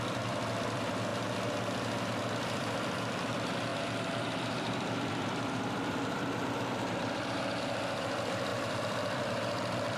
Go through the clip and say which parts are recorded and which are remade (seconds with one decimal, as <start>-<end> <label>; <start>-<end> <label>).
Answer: 0.0-1.1 remade; 1.1-2.2 recorded; 2.2-10.0 remade